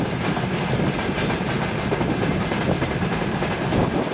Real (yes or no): no